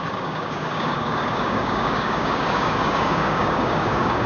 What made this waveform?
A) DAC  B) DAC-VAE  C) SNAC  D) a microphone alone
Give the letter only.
A